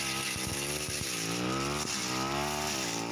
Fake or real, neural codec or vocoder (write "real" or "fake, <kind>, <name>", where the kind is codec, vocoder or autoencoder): real